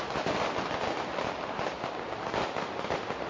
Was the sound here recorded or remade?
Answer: recorded